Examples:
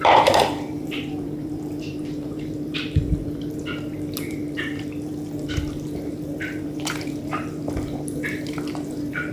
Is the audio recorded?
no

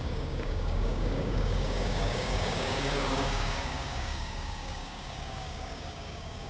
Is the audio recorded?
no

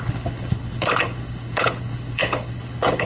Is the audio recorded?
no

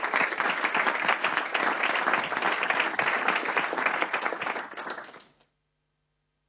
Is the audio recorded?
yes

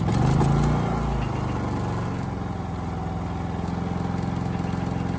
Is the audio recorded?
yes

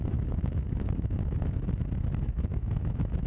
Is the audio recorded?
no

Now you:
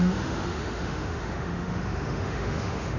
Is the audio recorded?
no